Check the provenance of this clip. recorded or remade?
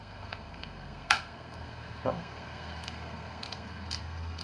remade